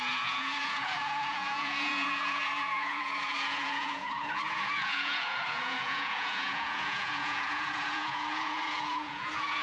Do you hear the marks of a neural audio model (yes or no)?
yes